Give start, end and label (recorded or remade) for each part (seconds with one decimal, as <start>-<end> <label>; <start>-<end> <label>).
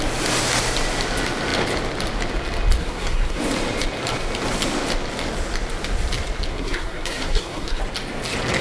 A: 0.0-2.8 recorded; 2.8-3.4 remade; 3.4-6.5 recorded; 6.5-7.8 remade; 7.8-8.6 recorded